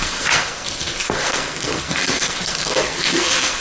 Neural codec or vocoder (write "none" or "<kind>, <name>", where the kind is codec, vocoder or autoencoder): codec, SNAC